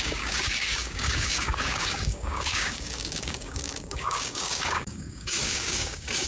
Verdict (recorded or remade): remade